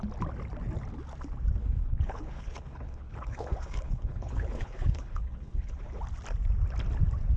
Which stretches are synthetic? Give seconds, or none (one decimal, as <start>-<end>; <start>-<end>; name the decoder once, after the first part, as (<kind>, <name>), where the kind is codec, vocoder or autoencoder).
1.6-6.0 (codec, HILCodec)